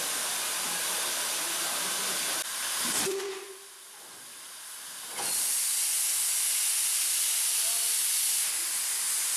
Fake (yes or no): no